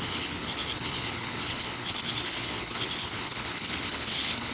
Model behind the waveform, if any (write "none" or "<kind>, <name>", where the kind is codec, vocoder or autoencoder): codec, HILCodec